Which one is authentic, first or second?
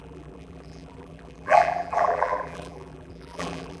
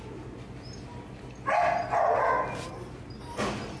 second